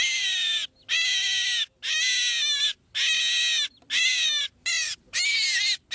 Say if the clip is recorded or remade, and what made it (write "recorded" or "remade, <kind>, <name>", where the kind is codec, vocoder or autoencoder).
recorded